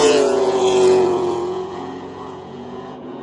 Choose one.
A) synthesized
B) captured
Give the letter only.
A